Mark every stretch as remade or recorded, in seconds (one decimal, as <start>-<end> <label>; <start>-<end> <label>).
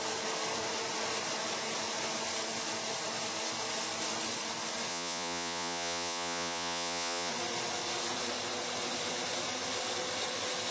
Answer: 0.0-4.9 recorded; 4.9-7.3 remade; 7.3-10.7 recorded